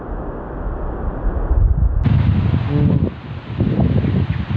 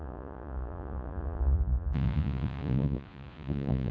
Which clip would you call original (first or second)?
first